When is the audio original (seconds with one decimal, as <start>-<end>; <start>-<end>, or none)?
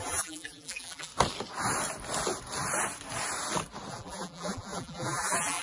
1.1-3.9